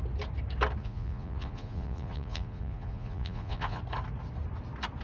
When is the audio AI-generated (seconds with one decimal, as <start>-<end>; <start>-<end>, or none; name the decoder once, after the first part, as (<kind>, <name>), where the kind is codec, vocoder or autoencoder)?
0.8-3.8 (vocoder, Vocos)